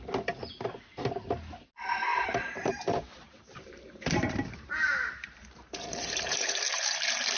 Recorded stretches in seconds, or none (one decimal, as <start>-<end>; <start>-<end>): 0.0-2.1; 6.5-7.4